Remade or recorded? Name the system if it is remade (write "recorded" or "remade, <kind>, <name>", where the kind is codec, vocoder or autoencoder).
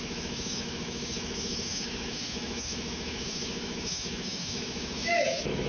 remade, autoencoder, DAC-VAE